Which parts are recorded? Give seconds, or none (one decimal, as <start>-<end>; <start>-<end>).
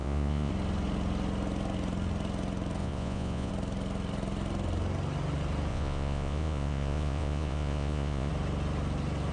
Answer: 0.5-2.8; 3.5-5.7; 8.3-9.3